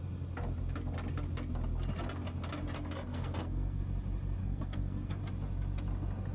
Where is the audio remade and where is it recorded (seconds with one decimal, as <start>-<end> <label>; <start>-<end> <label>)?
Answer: 0.0-3.1 recorded; 3.1-3.8 remade; 3.8-4.4 recorded; 4.4-5.2 remade; 5.2-6.3 recorded